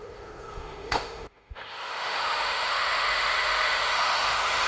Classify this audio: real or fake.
fake